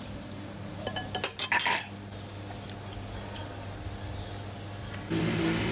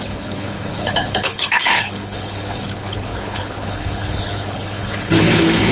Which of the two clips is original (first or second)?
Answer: first